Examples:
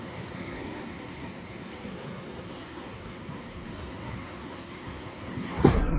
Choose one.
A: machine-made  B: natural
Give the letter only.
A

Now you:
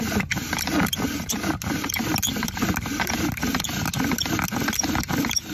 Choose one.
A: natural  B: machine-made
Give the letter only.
A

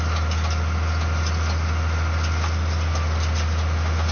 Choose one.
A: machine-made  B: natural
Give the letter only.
B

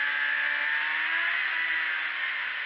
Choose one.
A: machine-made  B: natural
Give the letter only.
B